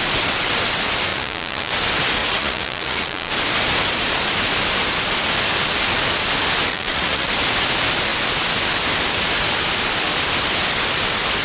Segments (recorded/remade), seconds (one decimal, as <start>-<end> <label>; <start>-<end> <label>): 0.0-1.1 recorded; 1.1-1.7 remade; 1.7-2.2 recorded; 2.2-3.3 remade; 3.3-6.7 recorded; 6.7-7.3 remade; 7.3-11.4 recorded